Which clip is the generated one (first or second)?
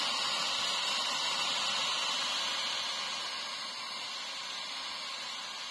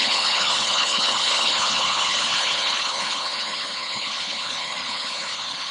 second